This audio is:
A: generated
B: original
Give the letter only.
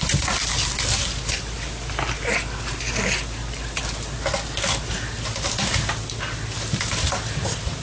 B